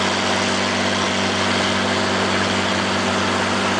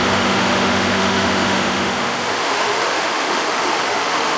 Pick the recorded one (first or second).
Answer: first